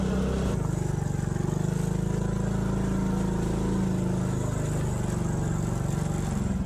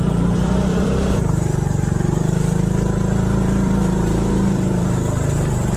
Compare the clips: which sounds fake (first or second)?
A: second